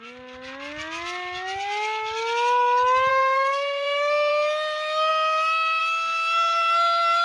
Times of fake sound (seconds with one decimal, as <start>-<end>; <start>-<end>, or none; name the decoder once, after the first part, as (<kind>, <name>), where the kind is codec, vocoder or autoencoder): 3.1-4.3 (codec, SNAC)